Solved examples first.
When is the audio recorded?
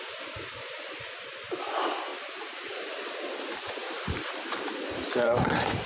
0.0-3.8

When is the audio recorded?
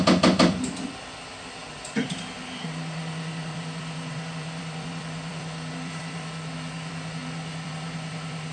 none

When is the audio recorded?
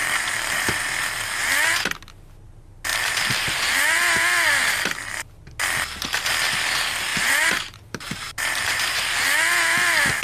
1.0-2.9; 3.6-7.1; 9.0-10.2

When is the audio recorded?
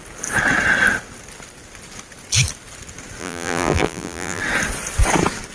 0.0-3.2; 4.4-5.5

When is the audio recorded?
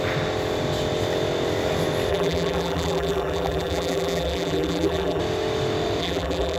0.0-2.1; 5.2-6.0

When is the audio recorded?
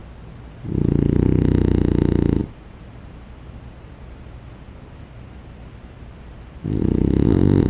0.0-0.7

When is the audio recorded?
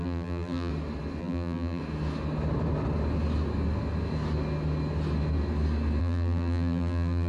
0.7-1.2; 1.8-6.0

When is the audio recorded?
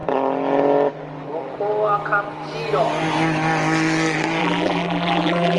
0.0-4.4